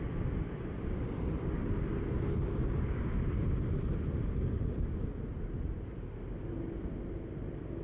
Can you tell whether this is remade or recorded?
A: recorded